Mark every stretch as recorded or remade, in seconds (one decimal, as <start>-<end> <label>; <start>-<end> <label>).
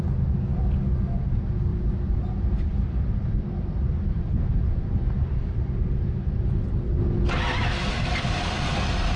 0.0-1.7 recorded; 1.7-6.8 remade; 6.8-9.2 recorded